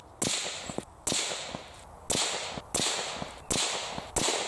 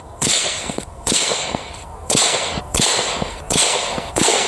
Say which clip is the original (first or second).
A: first